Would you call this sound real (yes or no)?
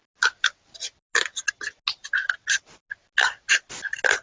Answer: yes